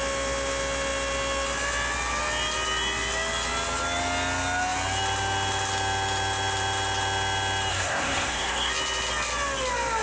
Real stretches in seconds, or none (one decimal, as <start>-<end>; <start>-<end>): 0.0-7.7; 8.7-10.0